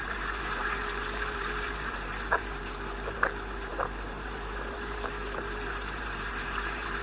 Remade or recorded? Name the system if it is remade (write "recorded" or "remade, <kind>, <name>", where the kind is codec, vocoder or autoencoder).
remade, vocoder, BigVGAN v2